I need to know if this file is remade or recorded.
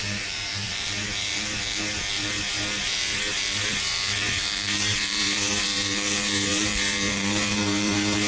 remade